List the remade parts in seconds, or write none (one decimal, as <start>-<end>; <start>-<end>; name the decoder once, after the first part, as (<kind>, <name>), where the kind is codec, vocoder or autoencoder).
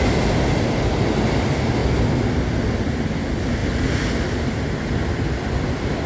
none